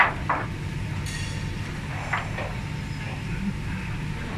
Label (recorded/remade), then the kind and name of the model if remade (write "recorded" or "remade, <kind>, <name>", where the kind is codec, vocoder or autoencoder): recorded